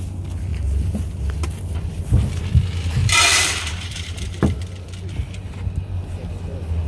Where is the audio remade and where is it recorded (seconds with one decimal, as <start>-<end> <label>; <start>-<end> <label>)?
0.0-3.0 recorded; 3.0-4.4 remade; 4.4-6.9 recorded

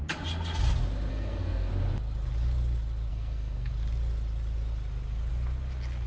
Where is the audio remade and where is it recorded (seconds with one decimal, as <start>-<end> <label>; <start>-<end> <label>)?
0.0-1.1 recorded; 1.1-1.7 remade; 1.7-3.1 recorded; 3.1-3.7 remade; 3.7-6.1 recorded

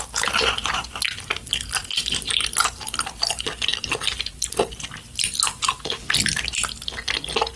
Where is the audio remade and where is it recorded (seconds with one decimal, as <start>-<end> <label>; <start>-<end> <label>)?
0.0-7.6 recorded

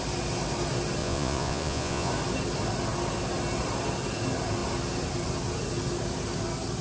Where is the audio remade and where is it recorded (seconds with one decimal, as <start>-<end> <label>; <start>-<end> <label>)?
0.0-1.0 recorded; 1.0-2.1 remade; 2.1-6.8 recorded

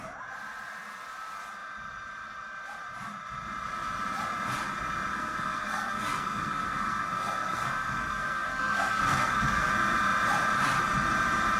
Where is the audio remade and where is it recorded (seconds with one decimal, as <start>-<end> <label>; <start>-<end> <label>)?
0.0-5.1 recorded; 5.1-9.7 remade; 9.7-11.6 recorded